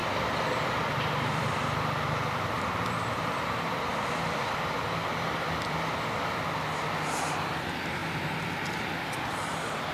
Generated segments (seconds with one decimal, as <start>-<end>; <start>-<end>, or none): 0.0-3.9; 5.3-8.0; 9.3-9.9